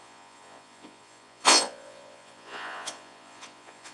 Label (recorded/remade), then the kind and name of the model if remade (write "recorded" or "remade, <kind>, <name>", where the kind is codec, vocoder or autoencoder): remade, vocoder, Vocos